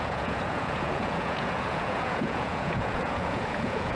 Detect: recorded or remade remade